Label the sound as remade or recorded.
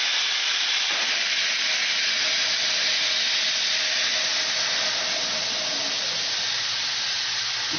recorded